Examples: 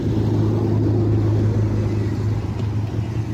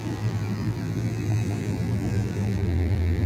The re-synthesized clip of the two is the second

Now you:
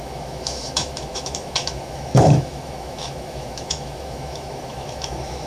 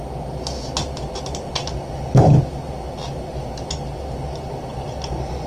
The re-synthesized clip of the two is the first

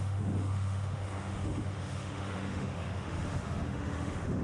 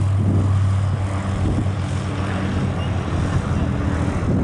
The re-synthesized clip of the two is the first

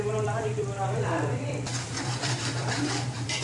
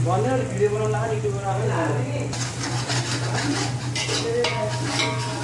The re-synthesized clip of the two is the first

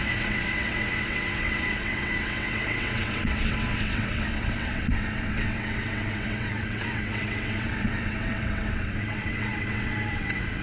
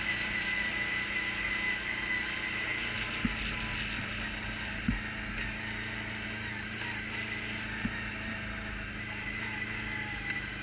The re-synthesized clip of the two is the first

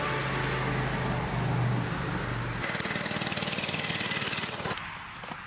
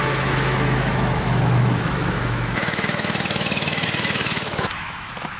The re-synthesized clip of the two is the second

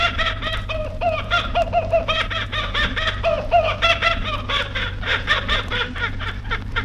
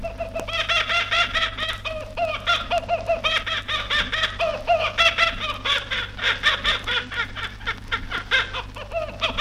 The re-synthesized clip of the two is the first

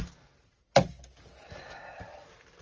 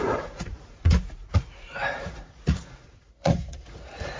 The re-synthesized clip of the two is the second